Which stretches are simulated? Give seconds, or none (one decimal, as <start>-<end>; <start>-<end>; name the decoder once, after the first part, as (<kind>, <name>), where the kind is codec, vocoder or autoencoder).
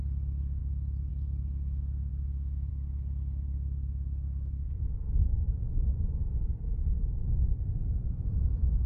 0.6-1.1 (vocoder, BigVGAN v2); 6.2-8.9